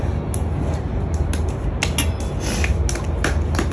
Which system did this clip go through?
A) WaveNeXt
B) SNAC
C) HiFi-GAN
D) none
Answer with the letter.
D